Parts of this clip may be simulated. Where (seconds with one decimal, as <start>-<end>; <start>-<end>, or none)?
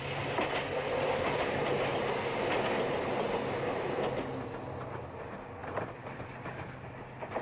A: none